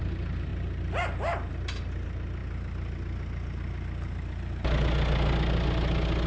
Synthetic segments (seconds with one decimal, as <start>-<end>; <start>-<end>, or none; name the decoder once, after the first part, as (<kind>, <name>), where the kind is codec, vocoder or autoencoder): none